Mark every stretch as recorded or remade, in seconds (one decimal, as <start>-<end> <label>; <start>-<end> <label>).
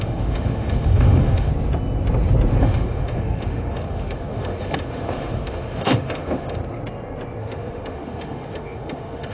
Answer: 0.0-1.5 remade; 1.5-2.6 recorded; 2.6-6.6 remade; 6.6-7.4 recorded; 7.4-9.3 remade